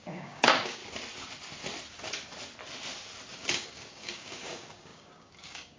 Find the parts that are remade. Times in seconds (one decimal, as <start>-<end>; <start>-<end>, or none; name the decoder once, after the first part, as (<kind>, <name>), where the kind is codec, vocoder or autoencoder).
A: 0.0-0.8 (codec, DAC); 3.4-5.8